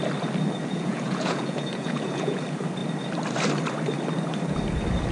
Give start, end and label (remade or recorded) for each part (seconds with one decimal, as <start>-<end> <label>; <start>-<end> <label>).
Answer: 0.0-0.6 recorded; 0.6-2.4 remade; 2.4-5.1 recorded